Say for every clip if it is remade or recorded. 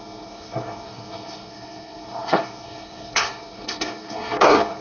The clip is remade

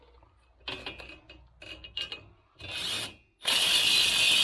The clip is recorded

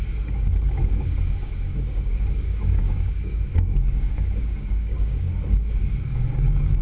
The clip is remade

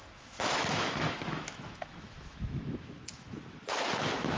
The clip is remade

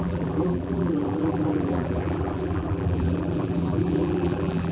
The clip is remade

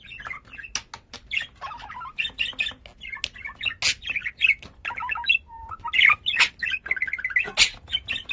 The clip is recorded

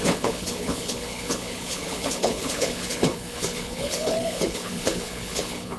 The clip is remade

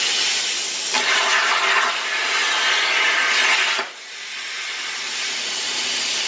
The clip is recorded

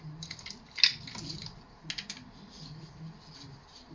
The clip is recorded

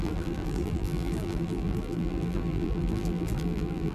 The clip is remade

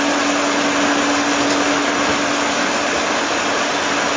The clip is recorded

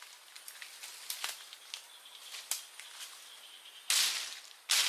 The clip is recorded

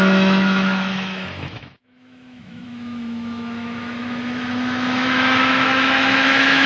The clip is remade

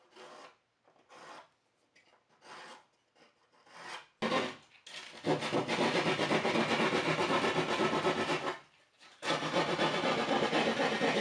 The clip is recorded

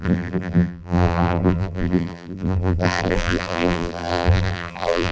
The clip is remade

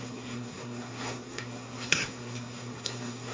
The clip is remade